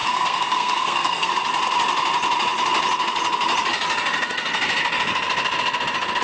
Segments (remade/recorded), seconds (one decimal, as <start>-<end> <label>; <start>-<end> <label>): 0.0-1.3 remade; 1.3-6.2 recorded